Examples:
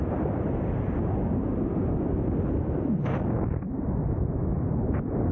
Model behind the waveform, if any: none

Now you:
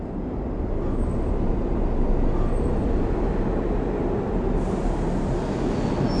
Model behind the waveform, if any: none